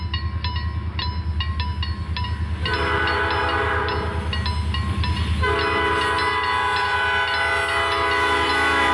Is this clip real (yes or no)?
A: yes